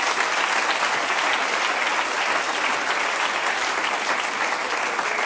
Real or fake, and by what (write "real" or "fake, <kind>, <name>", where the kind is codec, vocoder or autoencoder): real